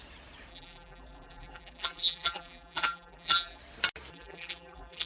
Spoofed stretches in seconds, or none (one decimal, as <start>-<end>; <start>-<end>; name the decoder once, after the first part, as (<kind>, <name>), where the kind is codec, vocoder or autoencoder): 0.5-3.6 (vocoder, BigVGAN v2); 4.1-5.1